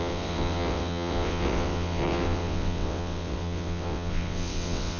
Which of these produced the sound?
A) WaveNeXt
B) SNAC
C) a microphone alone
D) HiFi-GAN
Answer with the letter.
A